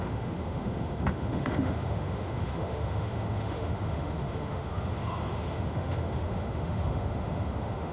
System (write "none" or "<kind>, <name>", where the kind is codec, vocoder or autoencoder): autoencoder, DAC-VAE